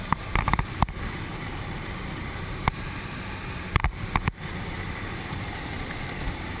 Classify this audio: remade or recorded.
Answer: remade